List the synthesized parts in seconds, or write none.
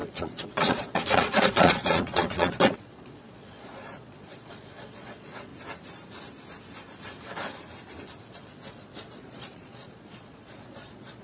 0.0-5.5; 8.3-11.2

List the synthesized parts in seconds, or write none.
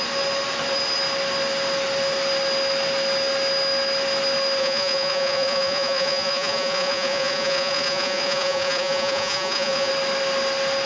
4.6-9.9